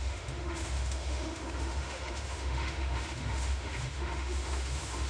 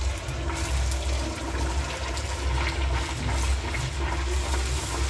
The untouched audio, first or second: second